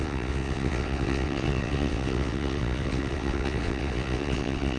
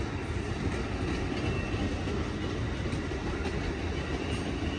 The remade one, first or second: first